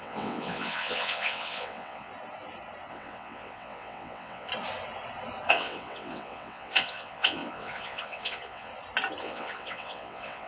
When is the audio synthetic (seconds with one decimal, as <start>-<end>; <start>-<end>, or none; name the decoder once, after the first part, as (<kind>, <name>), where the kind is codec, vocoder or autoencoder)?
0.0-2.1 (vocoder, WaveNeXt); 2.9-4.5; 5.5-8.7; 9.2-10.5